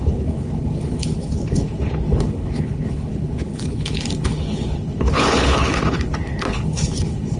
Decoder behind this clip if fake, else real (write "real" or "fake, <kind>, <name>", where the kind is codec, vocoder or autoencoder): fake, codec, HILCodec